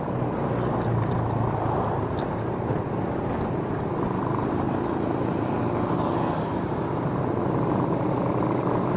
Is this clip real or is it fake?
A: real